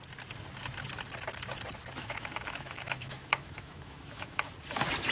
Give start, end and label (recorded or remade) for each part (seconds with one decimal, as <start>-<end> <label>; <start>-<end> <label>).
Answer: 0.0-2.0 recorded; 2.0-4.5 remade; 4.5-5.1 recorded